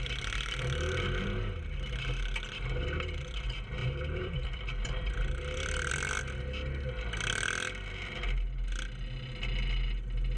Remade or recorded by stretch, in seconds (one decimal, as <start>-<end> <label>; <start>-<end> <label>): 0.0-3.8 recorded; 3.8-5.9 remade; 5.9-10.4 recorded